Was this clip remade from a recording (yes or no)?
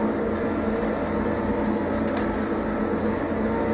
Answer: no